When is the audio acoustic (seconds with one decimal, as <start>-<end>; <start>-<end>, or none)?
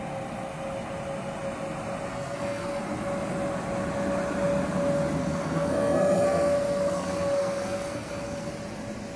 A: 0.0-2.1; 2.8-5.2; 8.5-9.2